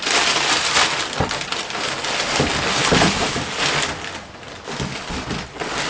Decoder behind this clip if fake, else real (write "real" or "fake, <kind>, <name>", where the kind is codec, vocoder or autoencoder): real